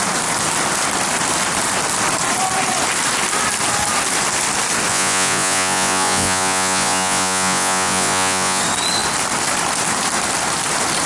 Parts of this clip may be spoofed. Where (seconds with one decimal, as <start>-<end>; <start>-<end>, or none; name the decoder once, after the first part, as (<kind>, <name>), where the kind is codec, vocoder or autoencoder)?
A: 4.9-8.6 (vocoder, Vocos)